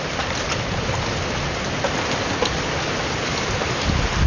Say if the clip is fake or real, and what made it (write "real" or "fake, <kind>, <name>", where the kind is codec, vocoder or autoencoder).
real